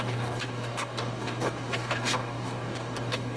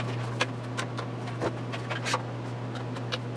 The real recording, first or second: second